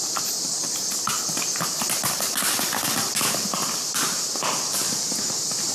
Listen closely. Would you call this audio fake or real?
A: real